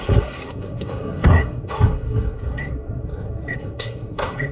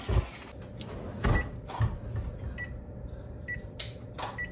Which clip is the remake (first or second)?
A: first